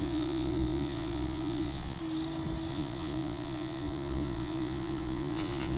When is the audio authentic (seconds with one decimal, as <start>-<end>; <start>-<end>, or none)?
2.0-2.7